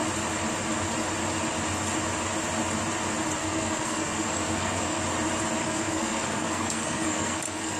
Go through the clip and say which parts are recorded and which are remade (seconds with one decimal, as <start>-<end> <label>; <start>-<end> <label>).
0.0-3.4 recorded; 3.4-5.0 remade; 5.0-5.6 recorded; 5.6-7.8 remade